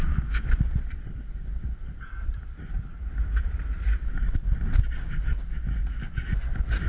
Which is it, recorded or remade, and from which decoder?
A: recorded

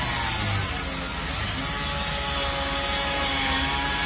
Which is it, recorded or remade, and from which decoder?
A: recorded